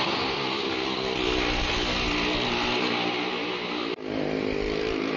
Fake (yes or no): no